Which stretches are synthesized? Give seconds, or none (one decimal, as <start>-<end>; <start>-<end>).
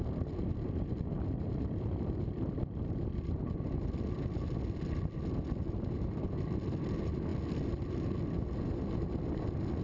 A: none